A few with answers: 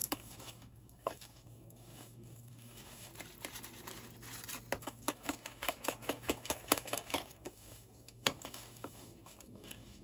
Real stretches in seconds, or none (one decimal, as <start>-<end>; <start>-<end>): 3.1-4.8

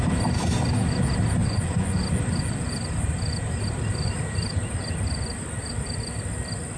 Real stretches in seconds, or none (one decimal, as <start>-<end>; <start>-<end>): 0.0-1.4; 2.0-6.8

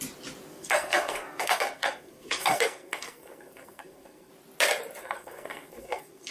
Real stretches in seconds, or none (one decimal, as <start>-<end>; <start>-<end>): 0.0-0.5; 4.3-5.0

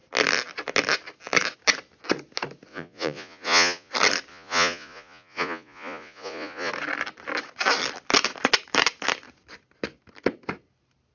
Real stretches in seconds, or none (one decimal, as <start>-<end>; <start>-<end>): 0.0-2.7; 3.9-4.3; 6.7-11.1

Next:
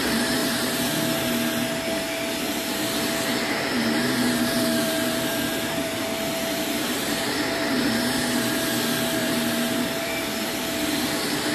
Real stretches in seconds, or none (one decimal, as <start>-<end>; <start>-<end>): 0.0-0.4; 1.3-3.3; 6.0-6.4; 7.7-9.2; 10.1-11.5

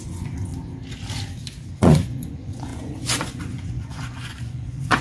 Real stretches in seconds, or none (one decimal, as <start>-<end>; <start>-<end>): 0.5-1.7

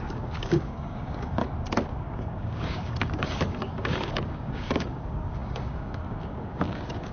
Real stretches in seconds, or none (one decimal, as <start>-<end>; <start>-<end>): 1.4-1.9